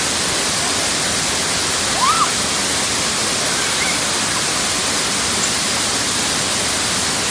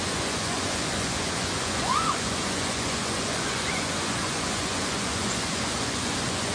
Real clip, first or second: first